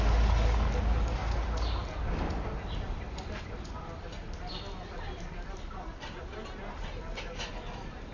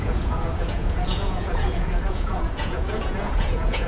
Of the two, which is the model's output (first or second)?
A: second